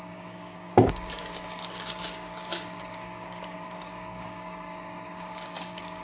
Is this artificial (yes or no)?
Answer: yes